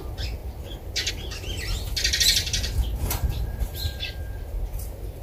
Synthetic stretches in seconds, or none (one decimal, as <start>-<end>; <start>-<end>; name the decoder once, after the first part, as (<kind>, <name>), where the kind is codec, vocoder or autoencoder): 2.9-4.1 (vocoder, BigVGAN v2)